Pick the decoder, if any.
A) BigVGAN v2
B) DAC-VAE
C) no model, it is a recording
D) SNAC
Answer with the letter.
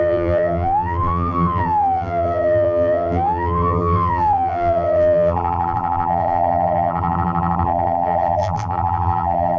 A